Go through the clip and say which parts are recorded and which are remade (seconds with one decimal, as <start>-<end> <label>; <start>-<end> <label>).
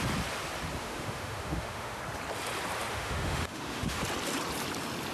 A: 0.0-0.8 recorded; 0.8-2.0 remade; 2.0-2.9 recorded; 2.9-4.0 remade; 4.0-5.1 recorded